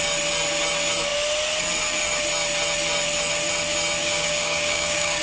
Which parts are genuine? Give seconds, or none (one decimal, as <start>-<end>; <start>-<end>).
0.0-4.0